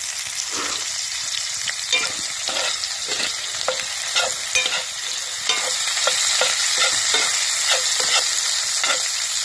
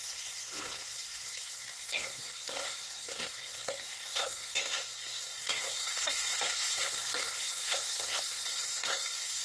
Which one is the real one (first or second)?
first